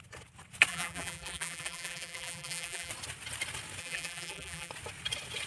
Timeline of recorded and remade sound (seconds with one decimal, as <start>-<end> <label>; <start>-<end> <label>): 0.0-0.7 recorded; 0.7-2.9 remade; 2.9-3.8 recorded; 3.8-4.7 remade; 4.7-5.5 recorded